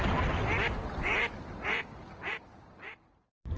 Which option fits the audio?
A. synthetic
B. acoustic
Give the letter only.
B